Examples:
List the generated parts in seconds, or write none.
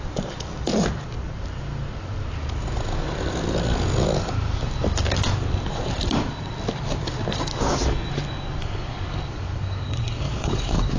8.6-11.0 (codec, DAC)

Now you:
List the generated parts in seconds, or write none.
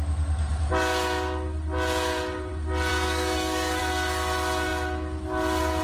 2.9-3.8 (codec, DAC)